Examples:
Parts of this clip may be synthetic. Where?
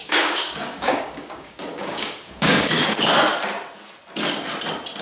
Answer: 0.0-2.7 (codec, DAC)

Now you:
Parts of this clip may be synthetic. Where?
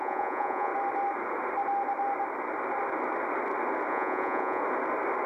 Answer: 0.0-0.7 (vocoder, Vocos); 3.9-4.6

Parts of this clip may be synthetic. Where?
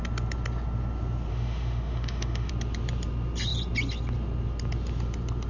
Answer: 1.3-2.5 (autoencoder, DAC-VAE)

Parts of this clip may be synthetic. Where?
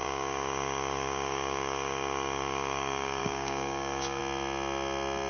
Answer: 0.0-4.2 (codec, DAC)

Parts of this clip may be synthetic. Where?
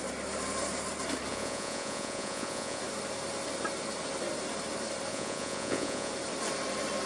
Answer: 1.3-2.8 (vocoder, Vocos); 5.1-6.1